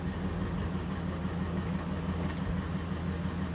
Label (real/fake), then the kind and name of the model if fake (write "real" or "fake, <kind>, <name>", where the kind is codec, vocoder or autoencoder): real